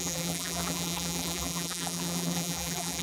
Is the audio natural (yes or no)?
no